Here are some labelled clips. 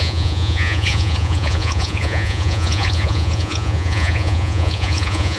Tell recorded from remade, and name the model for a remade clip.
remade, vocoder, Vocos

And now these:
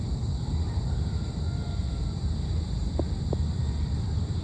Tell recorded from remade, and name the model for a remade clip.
recorded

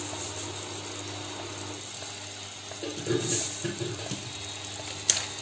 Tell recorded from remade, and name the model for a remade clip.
recorded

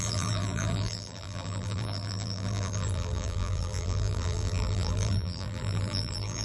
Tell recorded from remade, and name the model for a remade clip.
remade, vocoder, BigVGAN v2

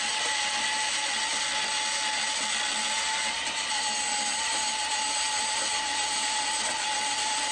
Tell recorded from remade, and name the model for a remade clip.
recorded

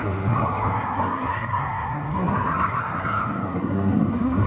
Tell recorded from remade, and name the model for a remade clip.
remade, codec, SNAC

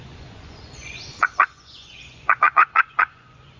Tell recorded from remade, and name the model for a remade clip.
remade, vocoder, Vocos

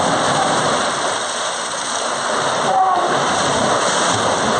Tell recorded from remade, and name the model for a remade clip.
recorded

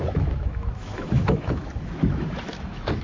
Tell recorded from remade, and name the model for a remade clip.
remade, autoencoder, DAC-VAE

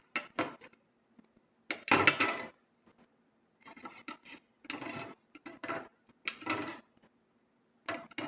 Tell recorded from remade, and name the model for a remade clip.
recorded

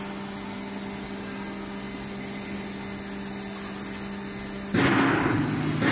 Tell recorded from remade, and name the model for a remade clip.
recorded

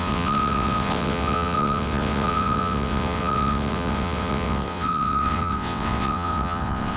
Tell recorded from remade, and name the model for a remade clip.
remade, vocoder, WaveNeXt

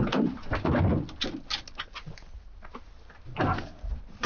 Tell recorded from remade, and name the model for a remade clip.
recorded